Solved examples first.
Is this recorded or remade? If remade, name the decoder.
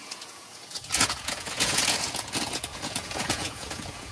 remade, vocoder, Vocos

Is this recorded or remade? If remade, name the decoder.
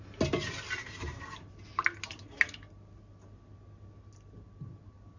recorded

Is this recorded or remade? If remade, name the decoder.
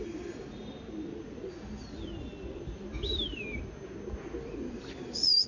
recorded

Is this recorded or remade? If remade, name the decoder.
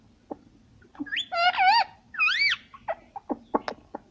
recorded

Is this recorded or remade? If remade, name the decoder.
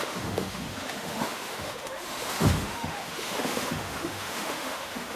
remade, autoencoder, DAC-VAE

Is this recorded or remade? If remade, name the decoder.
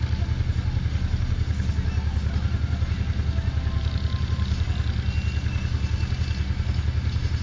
recorded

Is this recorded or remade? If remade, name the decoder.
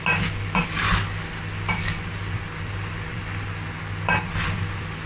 recorded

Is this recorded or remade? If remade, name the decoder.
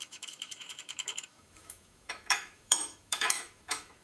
remade, autoencoder, DAC-VAE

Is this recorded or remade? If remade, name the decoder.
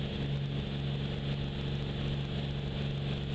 recorded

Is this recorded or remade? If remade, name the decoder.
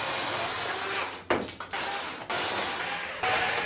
recorded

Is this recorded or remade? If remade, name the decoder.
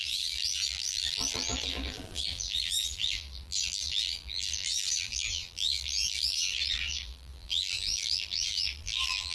remade, vocoder, BigVGAN v2